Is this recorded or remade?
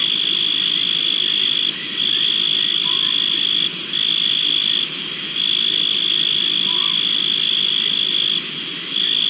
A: recorded